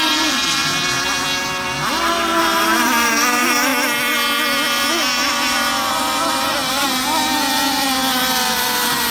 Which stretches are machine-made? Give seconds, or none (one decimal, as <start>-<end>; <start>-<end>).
0.0-0.6; 2.4-3.7